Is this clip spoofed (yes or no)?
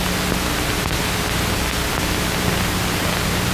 no